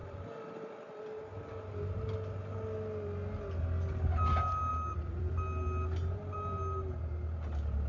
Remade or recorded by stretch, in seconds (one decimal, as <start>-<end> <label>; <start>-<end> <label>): 0.0-1.0 remade; 1.0-4.7 recorded; 4.7-5.3 remade; 5.3-7.9 recorded